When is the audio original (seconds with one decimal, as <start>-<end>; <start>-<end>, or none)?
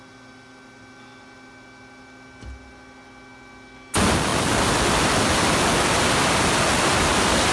0.0-7.5